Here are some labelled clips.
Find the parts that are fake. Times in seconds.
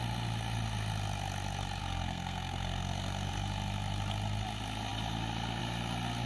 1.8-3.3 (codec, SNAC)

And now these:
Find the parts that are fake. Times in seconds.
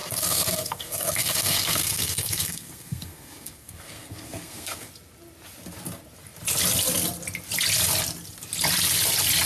0.0-4.9 (codec, SNAC)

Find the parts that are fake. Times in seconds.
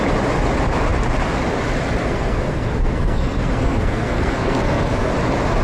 2.0-5.1 (codec, SNAC)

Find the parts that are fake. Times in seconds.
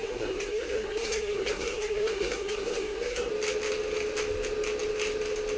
0.0-3.3 (codec, SNAC)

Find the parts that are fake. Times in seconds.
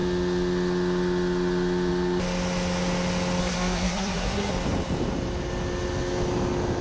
3.4-4.5 (codec, SNAC)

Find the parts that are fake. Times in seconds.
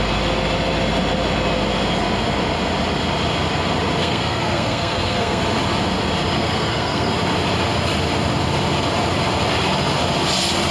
4.0-5.4 (codec, SNAC); 6.4-7.1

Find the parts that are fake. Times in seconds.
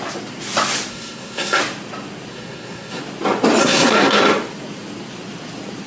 0.9-1.6 (codec, SNAC); 2.3-3.0; 3.6-4.2